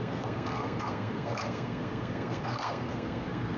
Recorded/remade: remade